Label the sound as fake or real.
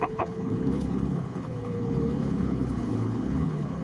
fake